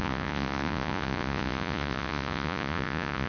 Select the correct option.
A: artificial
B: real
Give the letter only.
A